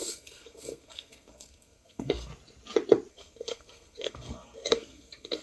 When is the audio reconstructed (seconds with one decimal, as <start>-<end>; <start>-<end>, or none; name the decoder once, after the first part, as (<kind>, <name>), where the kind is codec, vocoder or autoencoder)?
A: 0.0-2.3 (codec, SNAC); 3.1-5.4